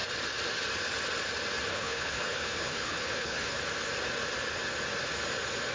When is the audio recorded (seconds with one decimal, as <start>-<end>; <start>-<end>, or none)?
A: 0.0-1.7; 3.6-5.7